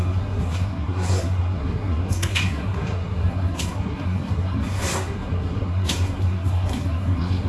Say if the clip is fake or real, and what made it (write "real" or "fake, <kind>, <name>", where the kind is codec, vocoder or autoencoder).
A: fake, codec, SNAC